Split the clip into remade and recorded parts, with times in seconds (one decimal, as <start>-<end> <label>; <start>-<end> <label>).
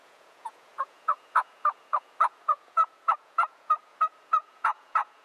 0.0-5.2 remade